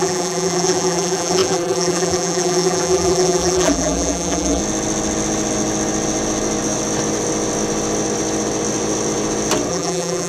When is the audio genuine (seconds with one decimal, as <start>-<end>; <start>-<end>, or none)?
4.6-9.7